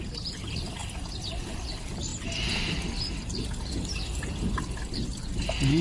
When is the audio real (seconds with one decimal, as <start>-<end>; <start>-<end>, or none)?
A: 0.0-5.8